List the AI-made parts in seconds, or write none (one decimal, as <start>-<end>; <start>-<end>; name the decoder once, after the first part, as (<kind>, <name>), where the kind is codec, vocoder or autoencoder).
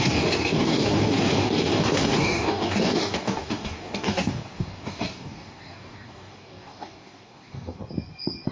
0.0-7.8 (codec, DAC)